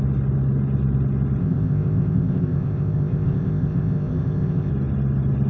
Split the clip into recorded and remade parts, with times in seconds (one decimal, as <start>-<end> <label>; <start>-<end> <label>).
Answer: 0.0-1.4 recorded; 1.4-4.7 remade; 4.7-5.5 recorded